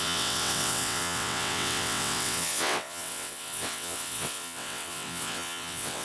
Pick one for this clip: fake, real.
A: fake